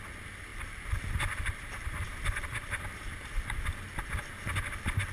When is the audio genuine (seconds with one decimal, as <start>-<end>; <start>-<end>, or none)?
0.0-0.5; 3.6-5.1